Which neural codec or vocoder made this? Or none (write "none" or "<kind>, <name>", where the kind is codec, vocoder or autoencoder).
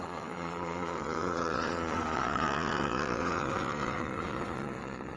vocoder, Vocos